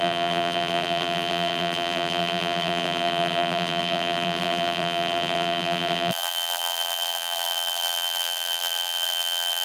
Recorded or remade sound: remade